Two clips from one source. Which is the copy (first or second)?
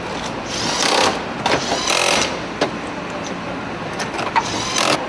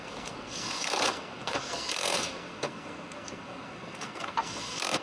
second